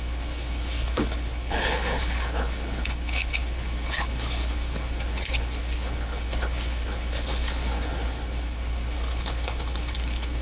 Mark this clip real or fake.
fake